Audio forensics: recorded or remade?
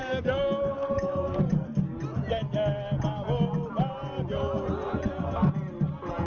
recorded